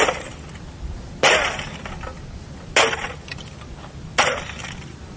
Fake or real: real